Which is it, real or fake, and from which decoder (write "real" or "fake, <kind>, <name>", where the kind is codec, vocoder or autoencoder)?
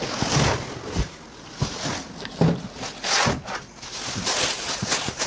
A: real